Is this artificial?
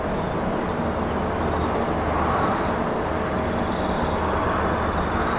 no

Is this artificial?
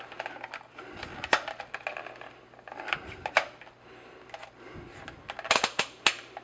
no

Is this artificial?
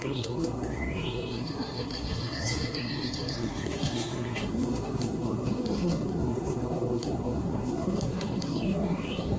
yes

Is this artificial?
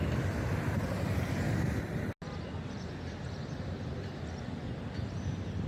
no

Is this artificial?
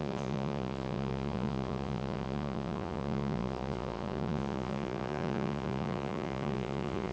yes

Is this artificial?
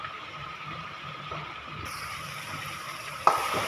yes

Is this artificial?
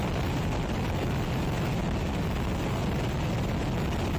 no